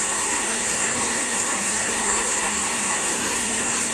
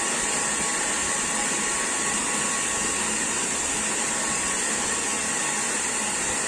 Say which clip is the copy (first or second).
first